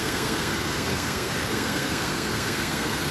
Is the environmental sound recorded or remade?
remade